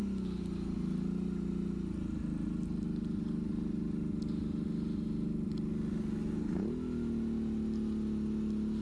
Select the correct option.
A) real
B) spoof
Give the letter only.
A